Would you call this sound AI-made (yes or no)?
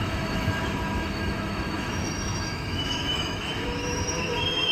yes